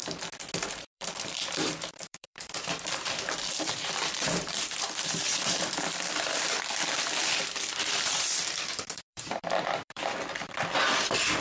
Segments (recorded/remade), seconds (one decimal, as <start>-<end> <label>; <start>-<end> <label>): 0.0-0.7 recorded; 0.7-11.4 remade